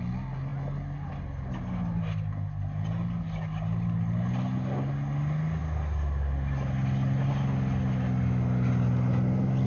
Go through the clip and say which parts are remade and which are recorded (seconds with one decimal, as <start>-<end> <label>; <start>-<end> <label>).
0.0-9.7 recorded